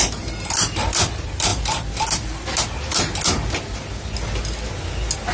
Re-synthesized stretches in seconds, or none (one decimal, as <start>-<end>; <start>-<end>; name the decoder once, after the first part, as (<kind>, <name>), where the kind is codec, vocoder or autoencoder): none